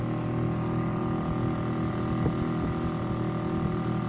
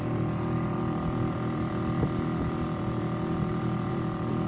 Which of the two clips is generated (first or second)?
second